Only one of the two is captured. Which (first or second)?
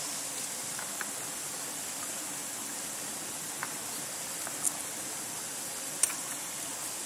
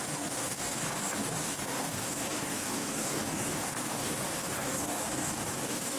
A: first